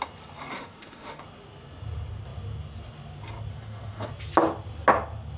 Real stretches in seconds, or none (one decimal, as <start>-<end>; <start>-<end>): 0.0-0.5; 1.2-3.5; 4.1-5.4